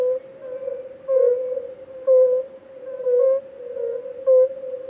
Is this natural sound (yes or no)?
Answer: yes